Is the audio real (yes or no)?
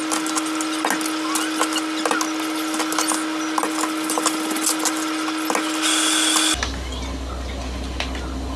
yes